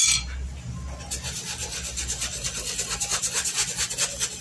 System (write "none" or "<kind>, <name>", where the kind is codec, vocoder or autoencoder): none